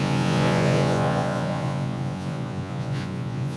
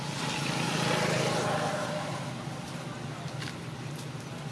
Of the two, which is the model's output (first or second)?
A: first